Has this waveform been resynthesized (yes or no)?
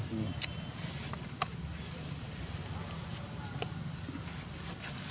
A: no